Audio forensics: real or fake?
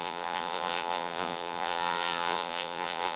fake